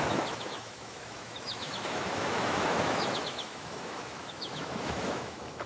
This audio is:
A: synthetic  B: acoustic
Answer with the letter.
A